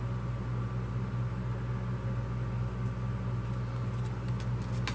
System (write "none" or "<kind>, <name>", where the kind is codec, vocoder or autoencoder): none